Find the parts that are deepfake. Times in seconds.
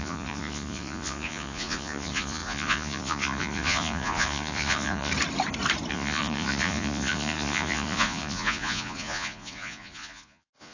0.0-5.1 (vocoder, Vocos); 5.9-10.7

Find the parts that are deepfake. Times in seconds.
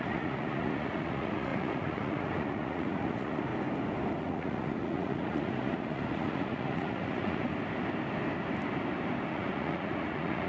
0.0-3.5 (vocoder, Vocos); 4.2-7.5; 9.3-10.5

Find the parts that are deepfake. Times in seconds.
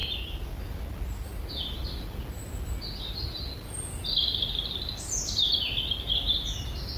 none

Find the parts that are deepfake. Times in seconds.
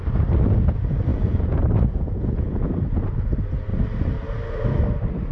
1.1-2.7 (vocoder, Vocos)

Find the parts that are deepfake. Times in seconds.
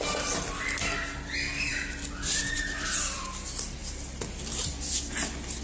none